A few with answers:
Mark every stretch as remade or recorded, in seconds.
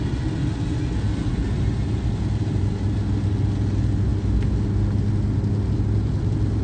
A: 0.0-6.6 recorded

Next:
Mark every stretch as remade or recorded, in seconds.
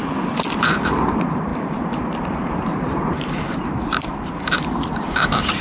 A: 0.0-0.6 recorded; 0.6-5.6 remade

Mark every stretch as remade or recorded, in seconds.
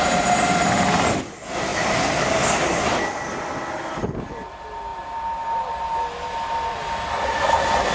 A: 0.0-7.9 recorded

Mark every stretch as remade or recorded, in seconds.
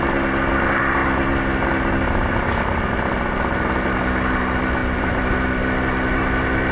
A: 0.0-4.8 recorded; 4.8-5.3 remade; 5.3-6.7 recorded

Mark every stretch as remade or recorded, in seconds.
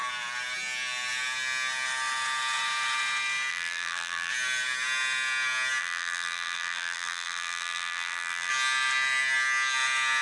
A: 0.0-3.5 recorded; 3.5-4.3 remade; 4.3-5.8 recorded; 5.8-8.5 remade; 8.5-10.2 recorded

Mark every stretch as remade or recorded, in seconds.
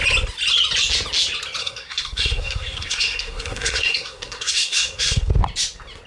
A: 0.0-1.6 recorded; 1.6-5.3 remade; 5.3-6.1 recorded